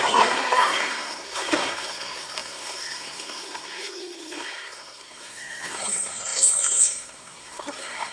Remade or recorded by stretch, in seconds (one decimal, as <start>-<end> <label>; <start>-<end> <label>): 0.0-8.1 remade